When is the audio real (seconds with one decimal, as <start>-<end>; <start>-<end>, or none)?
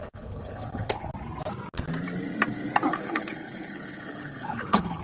1.1-2.9